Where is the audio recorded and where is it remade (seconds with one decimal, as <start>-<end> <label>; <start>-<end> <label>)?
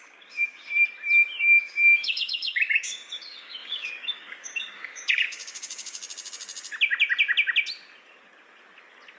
0.0-0.7 remade; 0.7-1.4 recorded; 1.4-6.0 remade; 6.0-9.2 recorded